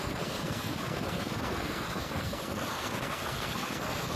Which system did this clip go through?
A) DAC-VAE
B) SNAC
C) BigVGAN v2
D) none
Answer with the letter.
B